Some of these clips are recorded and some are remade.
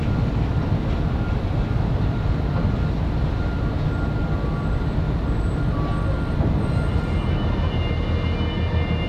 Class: recorded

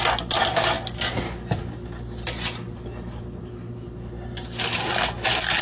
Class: recorded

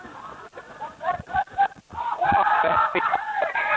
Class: remade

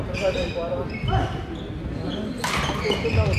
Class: recorded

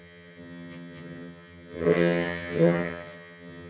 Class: remade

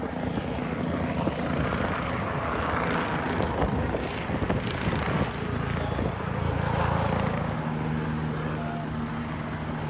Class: recorded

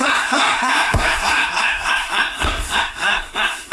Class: remade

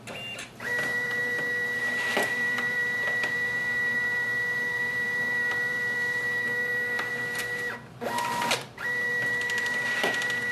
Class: remade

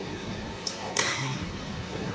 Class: remade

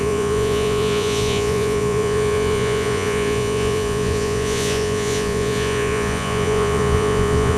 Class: remade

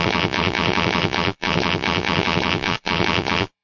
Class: remade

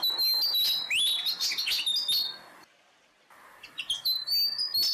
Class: recorded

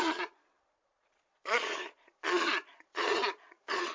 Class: remade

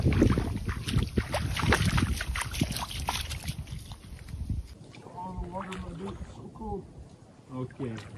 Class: recorded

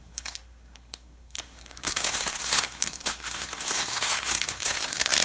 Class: remade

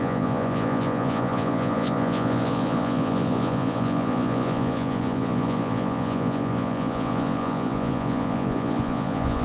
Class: remade